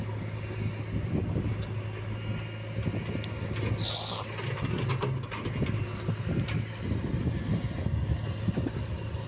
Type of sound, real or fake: real